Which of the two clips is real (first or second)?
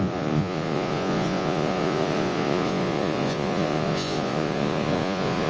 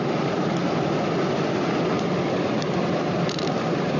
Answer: second